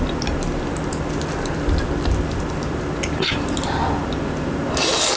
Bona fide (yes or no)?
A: yes